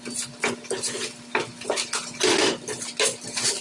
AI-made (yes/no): no